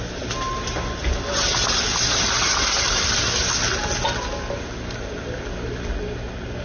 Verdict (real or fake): real